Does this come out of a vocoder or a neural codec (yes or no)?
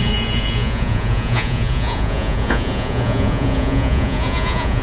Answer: yes